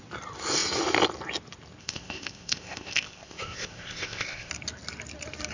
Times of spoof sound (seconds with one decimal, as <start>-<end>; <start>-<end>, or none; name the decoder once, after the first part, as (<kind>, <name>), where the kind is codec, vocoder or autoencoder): 1.8-4.5 (codec, ZipCodec)

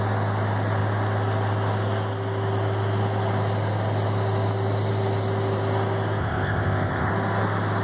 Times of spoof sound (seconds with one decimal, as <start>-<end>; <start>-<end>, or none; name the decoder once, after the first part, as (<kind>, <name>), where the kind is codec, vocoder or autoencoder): 6.2-7.1 (codec, ZipCodec)

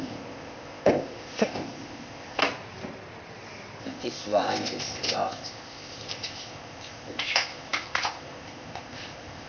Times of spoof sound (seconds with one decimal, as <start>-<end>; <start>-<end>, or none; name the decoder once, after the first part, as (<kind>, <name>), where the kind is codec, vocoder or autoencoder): 0.0-2.4 (codec, ZipCodec); 3.8-9.5

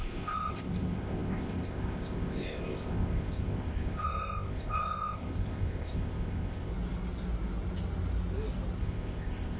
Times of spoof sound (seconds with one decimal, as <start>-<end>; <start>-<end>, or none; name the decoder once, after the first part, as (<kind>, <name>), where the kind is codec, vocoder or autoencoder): 0.0-6.7 (codec, ZipCodec); 8.8-9.6

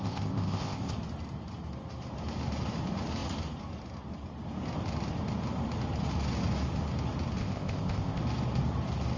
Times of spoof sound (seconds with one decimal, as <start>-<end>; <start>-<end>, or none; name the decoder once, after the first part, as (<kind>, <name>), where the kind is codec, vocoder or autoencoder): 0.0-0.9 (codec, ZipCodec); 7.4-8.2